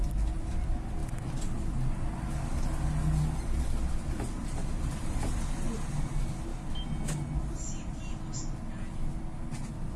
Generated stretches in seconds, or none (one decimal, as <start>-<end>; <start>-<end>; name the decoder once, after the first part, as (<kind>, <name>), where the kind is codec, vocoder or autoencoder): none